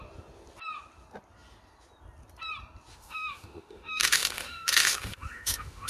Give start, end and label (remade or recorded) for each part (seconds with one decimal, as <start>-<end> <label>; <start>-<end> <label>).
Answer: 0.0-2.9 recorded; 2.9-5.9 remade